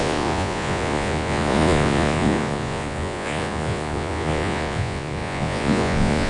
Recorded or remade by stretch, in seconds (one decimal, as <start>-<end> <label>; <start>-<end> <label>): 0.0-6.3 remade